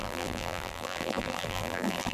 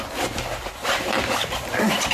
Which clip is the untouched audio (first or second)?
second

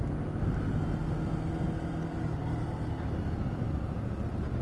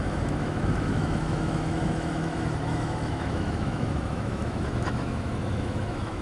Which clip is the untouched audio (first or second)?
first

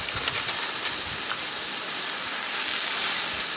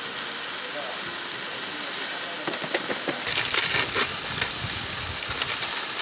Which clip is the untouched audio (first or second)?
second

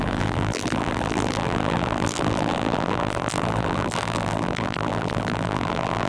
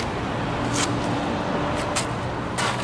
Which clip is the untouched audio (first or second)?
second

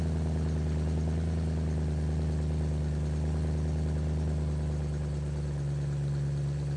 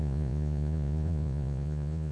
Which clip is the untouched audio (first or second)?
first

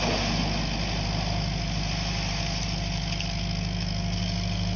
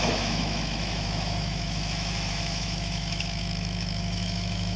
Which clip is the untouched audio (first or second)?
first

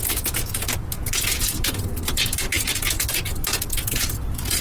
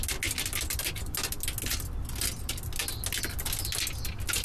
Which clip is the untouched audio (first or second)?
second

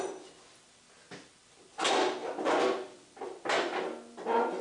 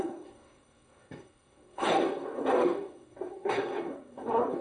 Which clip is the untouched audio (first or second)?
first